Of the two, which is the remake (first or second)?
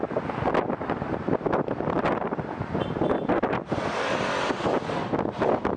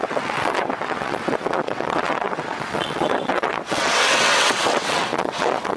second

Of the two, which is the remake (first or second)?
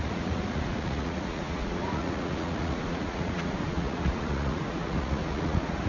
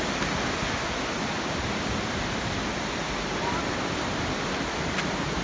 first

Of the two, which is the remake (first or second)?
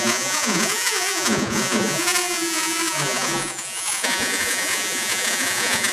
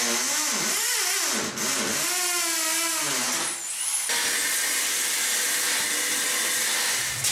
first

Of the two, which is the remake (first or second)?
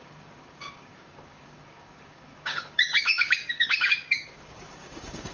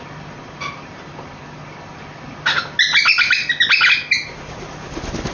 first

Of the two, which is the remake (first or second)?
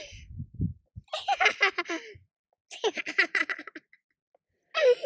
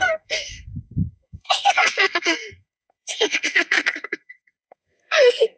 second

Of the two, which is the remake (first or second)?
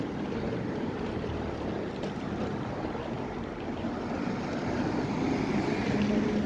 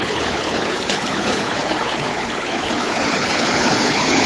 second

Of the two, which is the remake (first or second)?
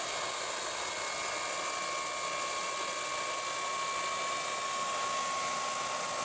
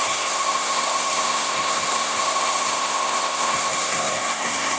second